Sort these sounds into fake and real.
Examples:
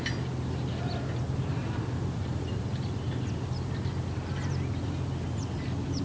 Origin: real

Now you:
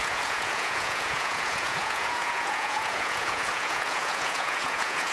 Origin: fake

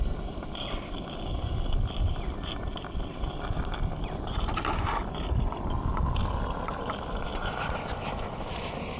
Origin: real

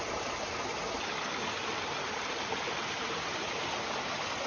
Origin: real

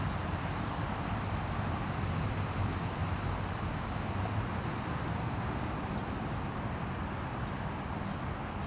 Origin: real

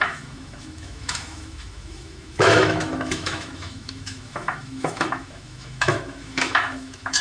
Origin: fake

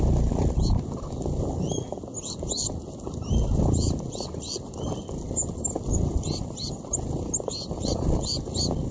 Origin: real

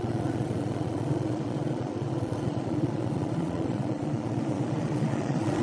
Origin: fake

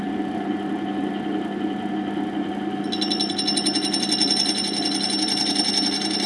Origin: real